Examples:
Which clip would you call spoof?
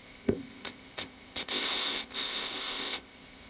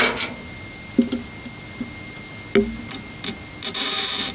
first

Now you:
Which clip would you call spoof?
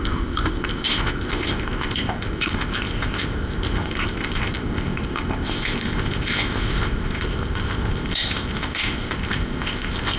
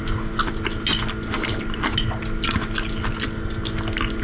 first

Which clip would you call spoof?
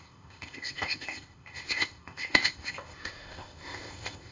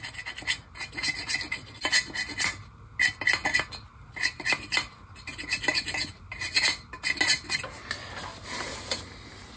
first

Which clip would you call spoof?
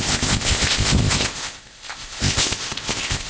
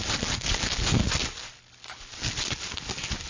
first